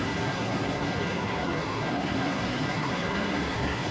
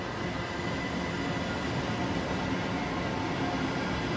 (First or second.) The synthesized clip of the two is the first